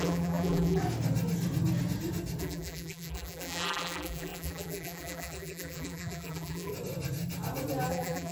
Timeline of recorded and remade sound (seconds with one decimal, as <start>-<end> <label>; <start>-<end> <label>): 0.0-0.8 remade; 0.8-2.4 recorded; 2.4-6.7 remade; 6.7-7.9 recorded; 7.9-8.3 remade